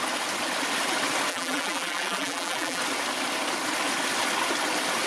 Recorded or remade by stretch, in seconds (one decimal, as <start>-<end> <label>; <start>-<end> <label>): 0.0-1.3 recorded; 1.3-2.8 remade; 2.8-5.1 recorded